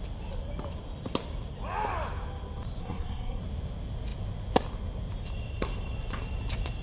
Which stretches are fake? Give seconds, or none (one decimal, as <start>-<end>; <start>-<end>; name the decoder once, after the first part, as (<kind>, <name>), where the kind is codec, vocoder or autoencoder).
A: 2.8-3.4 (codec, SNAC)